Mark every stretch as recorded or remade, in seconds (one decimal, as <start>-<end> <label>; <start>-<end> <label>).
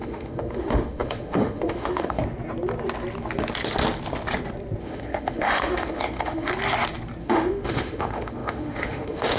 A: 0.0-2.2 remade; 2.2-4.8 recorded; 4.8-6.5 remade; 6.5-7.2 recorded; 7.2-9.4 remade